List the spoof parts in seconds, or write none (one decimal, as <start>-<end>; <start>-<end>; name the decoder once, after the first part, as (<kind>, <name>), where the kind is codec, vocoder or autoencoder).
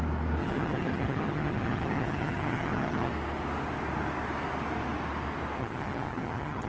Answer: 0.4-3.1 (vocoder, HiFi-GAN); 5.6-6.7